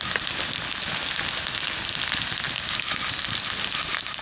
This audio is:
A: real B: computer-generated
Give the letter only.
A